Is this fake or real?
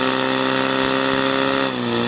real